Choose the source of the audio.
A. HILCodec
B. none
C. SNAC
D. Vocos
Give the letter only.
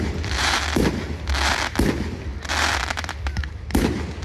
B